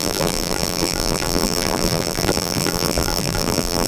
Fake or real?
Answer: fake